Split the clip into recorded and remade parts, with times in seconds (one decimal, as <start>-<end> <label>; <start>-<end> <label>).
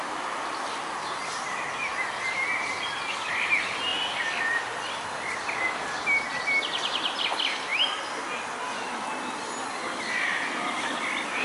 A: 0.0-3.9 recorded; 3.9-4.4 remade; 4.4-7.7 recorded; 7.7-8.4 remade; 8.4-11.4 recorded